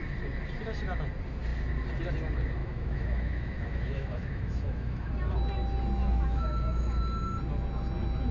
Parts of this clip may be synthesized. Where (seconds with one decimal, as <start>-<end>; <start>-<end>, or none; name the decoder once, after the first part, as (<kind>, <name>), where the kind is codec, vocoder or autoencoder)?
2.6-5.1 (autoencoder, DAC-VAE); 6.0-7.0